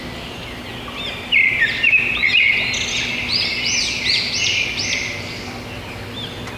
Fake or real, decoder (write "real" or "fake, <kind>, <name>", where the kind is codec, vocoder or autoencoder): real